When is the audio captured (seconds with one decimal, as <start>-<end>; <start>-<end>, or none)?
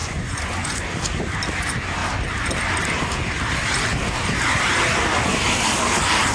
0.8-6.3